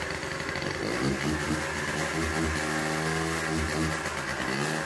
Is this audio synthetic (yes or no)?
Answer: no